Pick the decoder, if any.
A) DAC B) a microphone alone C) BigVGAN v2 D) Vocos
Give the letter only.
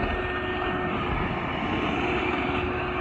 B